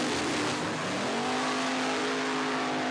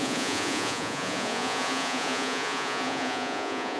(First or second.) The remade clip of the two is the second